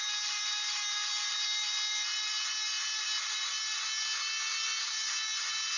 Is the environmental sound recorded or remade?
recorded